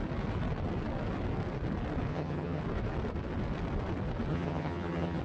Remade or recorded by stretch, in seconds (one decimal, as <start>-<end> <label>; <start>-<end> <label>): 0.0-2.1 recorded; 2.1-2.6 remade; 2.6-4.3 recorded; 4.3-5.2 remade